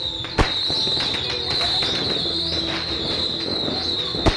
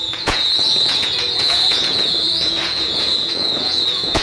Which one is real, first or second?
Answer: first